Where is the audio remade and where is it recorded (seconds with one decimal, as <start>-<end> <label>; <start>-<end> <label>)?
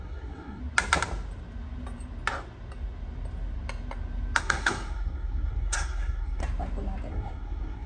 0.0-0.6 remade; 0.6-4.4 recorded; 4.4-6.4 remade; 6.4-7.1 recorded; 7.1-7.9 remade